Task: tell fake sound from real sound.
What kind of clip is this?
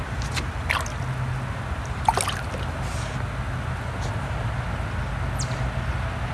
real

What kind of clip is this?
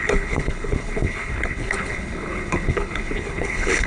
fake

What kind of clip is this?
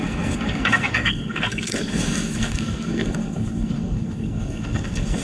fake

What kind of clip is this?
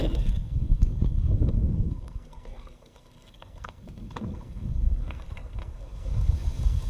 fake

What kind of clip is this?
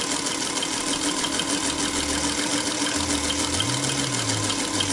real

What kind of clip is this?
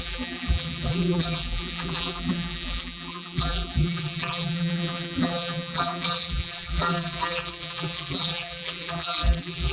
fake